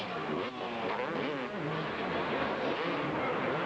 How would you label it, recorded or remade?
recorded